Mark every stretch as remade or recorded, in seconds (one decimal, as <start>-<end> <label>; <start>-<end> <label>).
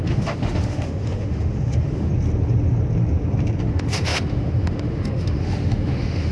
0.0-2.1 remade; 2.1-3.6 recorded; 3.6-6.3 remade